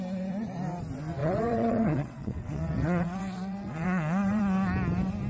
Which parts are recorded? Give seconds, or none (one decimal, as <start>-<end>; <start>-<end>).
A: 0.0-1.2; 4.4-5.3